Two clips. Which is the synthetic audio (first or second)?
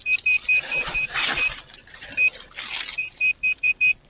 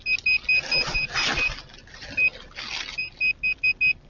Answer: first